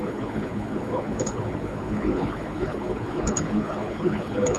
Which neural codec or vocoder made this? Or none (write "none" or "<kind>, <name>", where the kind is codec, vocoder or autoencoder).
codec, HILCodec